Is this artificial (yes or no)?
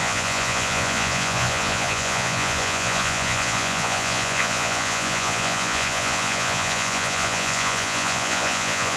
yes